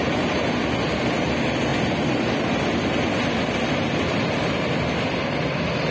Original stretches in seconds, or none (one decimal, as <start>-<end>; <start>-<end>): 0.0-5.9